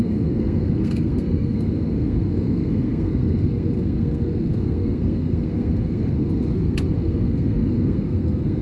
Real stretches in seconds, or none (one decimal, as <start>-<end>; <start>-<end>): none